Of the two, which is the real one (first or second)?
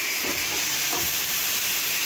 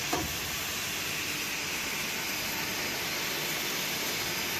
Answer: second